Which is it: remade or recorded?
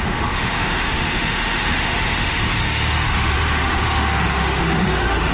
remade